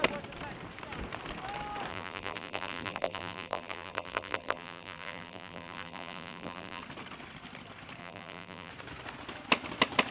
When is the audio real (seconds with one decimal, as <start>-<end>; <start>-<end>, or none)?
0.0-1.9; 6.8-8.0; 8.7-10.1